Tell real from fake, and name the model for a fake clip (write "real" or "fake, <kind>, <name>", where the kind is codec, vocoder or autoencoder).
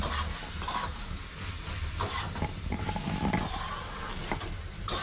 real